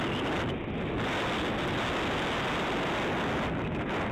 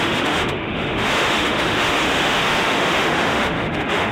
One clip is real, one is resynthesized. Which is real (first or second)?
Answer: first